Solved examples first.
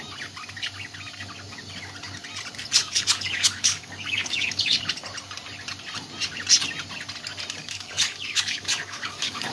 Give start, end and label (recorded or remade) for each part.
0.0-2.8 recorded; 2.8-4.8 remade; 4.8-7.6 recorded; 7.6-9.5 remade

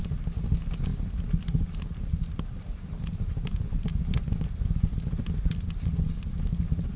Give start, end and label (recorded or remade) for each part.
0.0-7.0 recorded

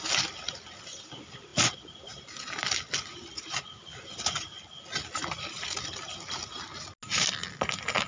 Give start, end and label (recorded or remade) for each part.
0.0-8.1 recorded

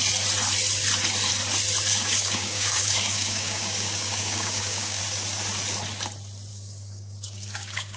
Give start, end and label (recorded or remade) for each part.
0.0-1.9 recorded; 1.9-5.0 remade; 5.0-6.5 recorded; 6.5-8.0 remade

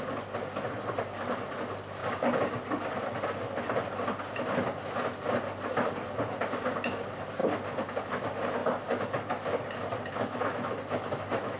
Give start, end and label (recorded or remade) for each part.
0.0-11.6 recorded

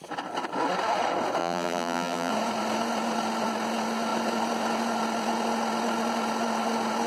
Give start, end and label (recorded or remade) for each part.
0.0-1.4 recorded; 1.4-2.3 remade; 2.3-7.1 recorded